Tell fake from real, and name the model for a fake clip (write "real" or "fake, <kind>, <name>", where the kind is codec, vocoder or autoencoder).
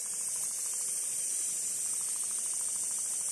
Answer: real